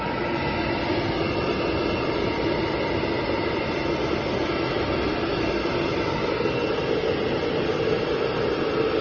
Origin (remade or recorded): recorded